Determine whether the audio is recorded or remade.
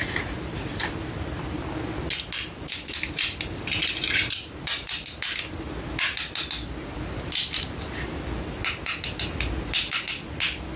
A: recorded